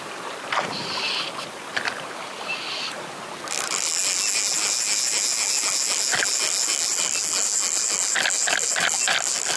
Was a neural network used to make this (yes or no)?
no